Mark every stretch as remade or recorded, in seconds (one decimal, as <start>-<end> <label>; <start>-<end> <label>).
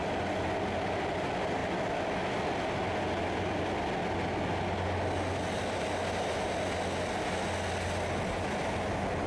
0.0-9.3 recorded